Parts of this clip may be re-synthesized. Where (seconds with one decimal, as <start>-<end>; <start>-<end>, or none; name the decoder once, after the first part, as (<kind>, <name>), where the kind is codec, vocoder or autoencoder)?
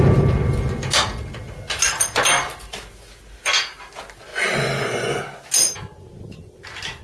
4.3-5.2 (vocoder, Vocos)